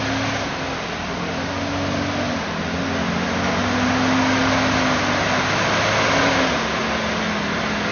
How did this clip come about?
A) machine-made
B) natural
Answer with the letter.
B